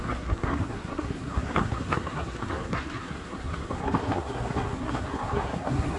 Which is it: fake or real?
fake